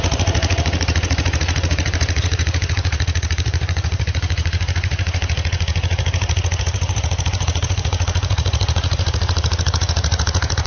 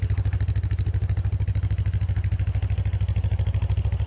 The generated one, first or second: first